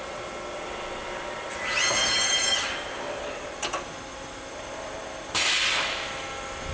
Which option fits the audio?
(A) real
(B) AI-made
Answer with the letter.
A